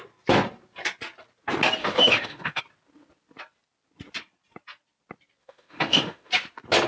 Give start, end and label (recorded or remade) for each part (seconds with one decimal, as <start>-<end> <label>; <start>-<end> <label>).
0.0-1.8 recorded; 1.8-2.6 remade; 2.6-5.4 recorded; 5.4-6.3 remade; 6.3-6.9 recorded